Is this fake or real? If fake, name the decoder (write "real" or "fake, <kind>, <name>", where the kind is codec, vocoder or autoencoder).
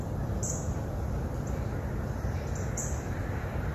real